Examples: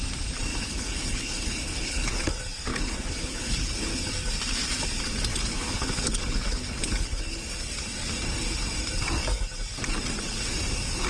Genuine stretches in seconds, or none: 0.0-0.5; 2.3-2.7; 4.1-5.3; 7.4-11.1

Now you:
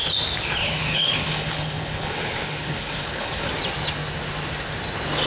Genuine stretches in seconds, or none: 0.0-0.6; 3.5-5.3

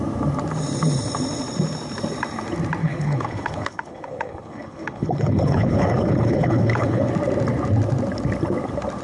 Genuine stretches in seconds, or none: 0.0-2.8; 7.1-9.0

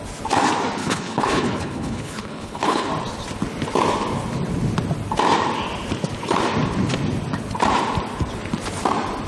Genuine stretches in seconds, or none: 0.0-0.8; 2.9-9.3

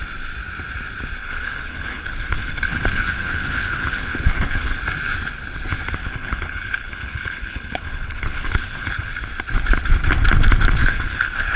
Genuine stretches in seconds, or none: 0.0-1.2; 4.8-6.0; 9.1-10.8

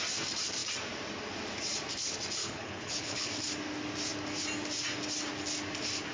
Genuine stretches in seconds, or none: 0.0-2.4; 3.3-6.1